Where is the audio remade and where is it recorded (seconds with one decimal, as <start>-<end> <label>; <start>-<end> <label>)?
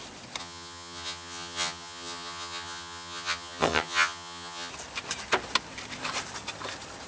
0.0-0.4 recorded; 0.4-4.7 remade; 4.7-7.1 recorded